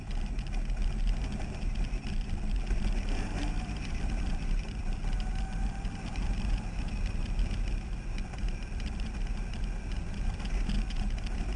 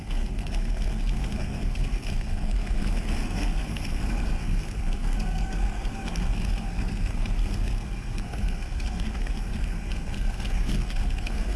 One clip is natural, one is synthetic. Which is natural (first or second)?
first